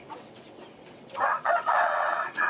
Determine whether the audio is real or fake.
fake